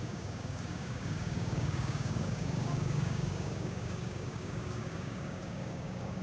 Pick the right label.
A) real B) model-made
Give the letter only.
B